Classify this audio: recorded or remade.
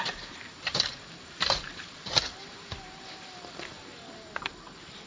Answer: remade